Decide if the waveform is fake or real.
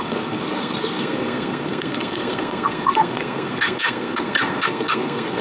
fake